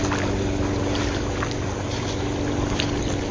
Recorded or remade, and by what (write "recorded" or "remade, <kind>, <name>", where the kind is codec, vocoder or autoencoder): recorded